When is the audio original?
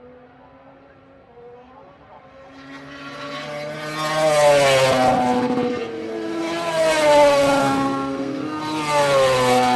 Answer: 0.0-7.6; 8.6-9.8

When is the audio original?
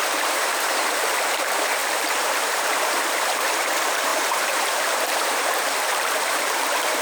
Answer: none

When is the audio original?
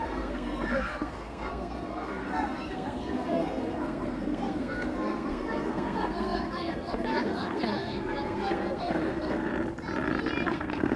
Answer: 9.5-10.5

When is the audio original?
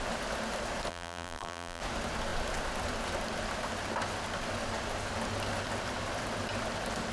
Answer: 0.0-0.9; 1.8-7.1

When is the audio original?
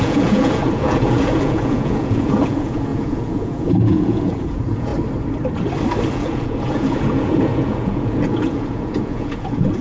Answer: 4.9-6.1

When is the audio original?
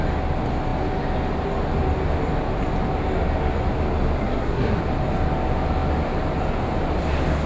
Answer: 0.0-4.2; 4.8-7.5